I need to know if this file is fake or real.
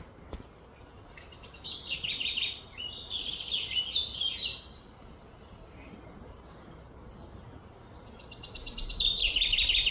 real